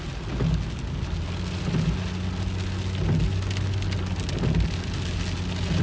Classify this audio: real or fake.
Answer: real